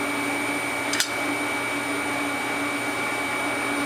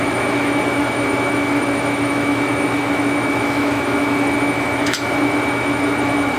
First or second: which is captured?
first